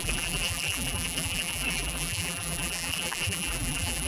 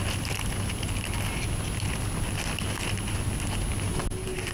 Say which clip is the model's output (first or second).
first